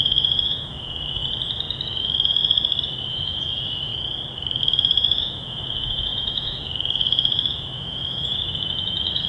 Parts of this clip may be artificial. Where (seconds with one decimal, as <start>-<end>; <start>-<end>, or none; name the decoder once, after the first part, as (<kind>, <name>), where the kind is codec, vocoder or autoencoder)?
0.0-1.2 (autoencoder, DAC-VAE); 2.0-2.4; 3.1-3.9; 4.6-9.3